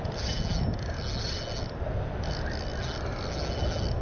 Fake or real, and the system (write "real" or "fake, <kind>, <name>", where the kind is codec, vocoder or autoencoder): real